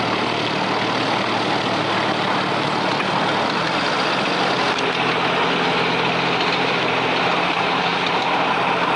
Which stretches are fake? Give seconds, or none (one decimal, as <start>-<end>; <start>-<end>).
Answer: 7.9-8.6